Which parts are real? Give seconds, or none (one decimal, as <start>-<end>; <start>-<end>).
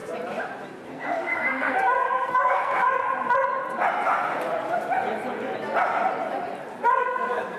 0.0-0.9; 3.0-7.0